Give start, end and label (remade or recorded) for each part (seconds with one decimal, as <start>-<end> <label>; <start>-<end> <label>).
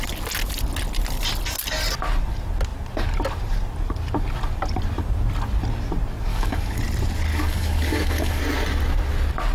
0.0-6.3 recorded; 6.3-6.8 remade; 6.8-7.3 recorded; 7.3-8.4 remade; 8.4-9.5 recorded